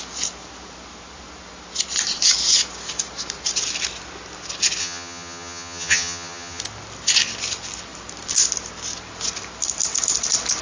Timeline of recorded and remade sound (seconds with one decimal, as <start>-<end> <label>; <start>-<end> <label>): 0.0-4.8 recorded; 4.8-6.6 remade; 6.6-10.6 recorded